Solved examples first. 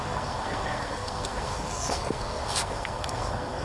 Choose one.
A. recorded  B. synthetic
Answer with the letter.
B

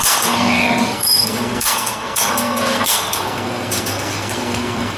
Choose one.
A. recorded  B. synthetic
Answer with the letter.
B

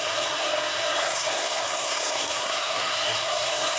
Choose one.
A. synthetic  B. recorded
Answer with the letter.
A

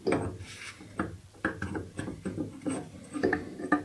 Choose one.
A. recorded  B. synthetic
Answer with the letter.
A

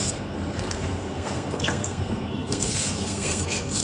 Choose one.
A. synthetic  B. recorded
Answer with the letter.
A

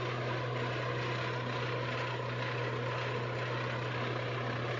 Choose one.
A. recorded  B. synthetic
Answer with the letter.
A